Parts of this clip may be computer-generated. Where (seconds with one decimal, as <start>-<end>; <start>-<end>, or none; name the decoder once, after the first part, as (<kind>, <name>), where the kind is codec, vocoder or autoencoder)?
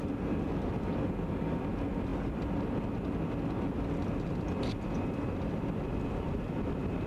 none